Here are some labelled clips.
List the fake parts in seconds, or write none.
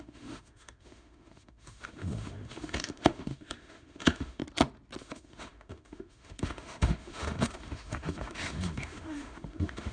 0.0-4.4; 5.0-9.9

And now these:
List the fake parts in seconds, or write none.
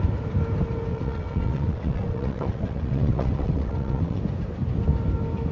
0.9-4.2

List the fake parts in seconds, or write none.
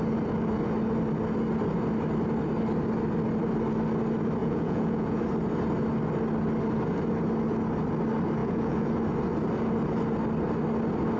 4.4-5.2; 8.4-8.9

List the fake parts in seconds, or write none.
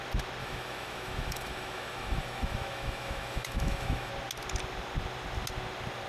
0.4-4.1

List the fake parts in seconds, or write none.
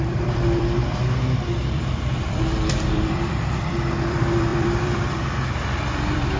0.0-6.4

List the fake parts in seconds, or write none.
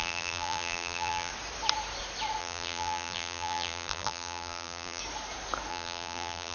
0.0-1.3; 2.4-5.0; 5.7-6.5